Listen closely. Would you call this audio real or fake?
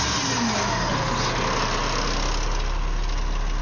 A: real